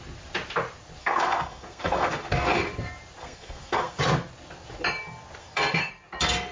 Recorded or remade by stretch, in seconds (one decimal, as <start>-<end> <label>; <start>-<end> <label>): 0.0-1.0 recorded; 1.0-2.6 remade; 2.6-3.2 recorded; 3.2-4.0 remade; 4.0-5.4 recorded; 5.4-5.9 remade; 5.9-6.5 recorded

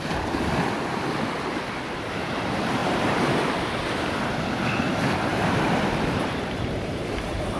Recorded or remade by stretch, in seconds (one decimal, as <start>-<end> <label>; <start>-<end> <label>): 0.0-2.8 recorded; 2.8-3.5 remade; 3.5-5.3 recorded; 5.3-7.6 remade

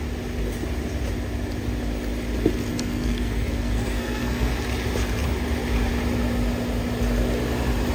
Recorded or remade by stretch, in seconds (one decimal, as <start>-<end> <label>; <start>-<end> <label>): 0.0-2.7 recorded; 2.7-4.5 remade; 4.5-7.9 recorded

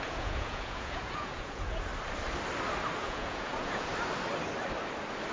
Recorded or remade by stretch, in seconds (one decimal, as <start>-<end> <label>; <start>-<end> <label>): 0.0-1.9 remade; 1.9-3.0 recorded; 3.0-3.9 remade; 3.9-5.3 recorded